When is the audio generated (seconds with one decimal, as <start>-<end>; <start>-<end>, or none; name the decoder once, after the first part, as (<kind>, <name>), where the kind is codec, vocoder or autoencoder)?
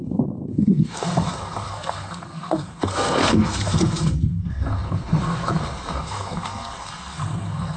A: 0.0-7.8 (codec, SNAC)